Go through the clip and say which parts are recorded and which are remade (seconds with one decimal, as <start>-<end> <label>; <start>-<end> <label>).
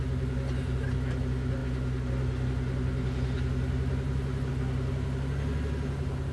0.0-6.3 recorded